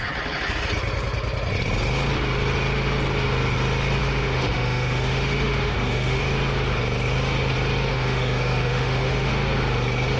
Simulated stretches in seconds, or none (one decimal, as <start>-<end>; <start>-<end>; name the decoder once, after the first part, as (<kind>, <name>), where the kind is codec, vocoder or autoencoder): 4.0-6.2 (autoencoder, DAC-VAE); 7.9-9.3